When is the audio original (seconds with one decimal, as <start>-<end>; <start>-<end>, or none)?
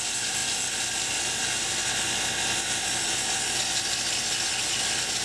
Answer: 0.0-5.2